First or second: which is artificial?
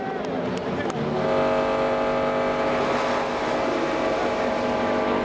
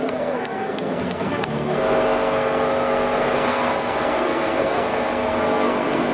second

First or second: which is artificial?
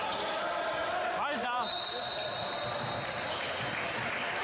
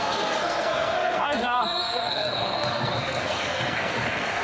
second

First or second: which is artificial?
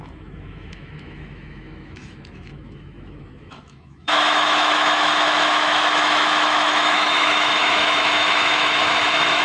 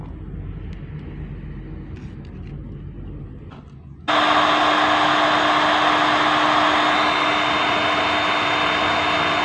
first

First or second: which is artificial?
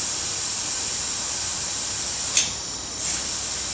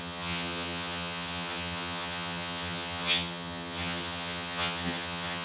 second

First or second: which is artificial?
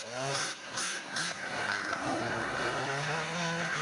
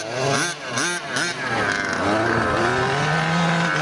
first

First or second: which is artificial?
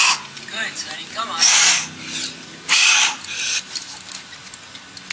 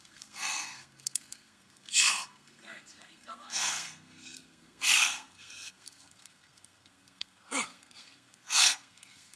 second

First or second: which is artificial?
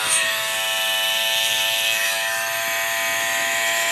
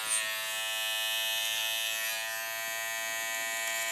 first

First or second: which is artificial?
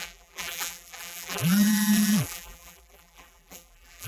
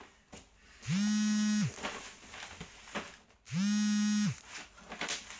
first